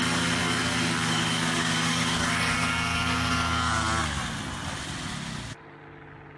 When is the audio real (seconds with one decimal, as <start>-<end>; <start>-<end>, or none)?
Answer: 0.0-0.4; 4.2-6.4